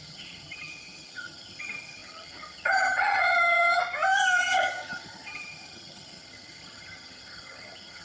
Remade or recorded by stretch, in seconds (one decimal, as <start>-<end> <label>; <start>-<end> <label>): 0.0-3.8 remade; 3.8-4.4 recorded; 4.4-8.0 remade